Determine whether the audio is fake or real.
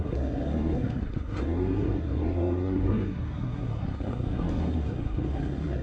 fake